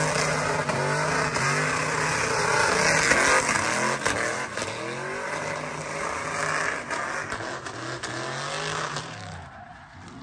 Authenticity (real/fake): real